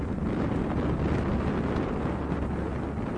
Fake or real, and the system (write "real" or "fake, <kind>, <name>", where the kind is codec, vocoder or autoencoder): real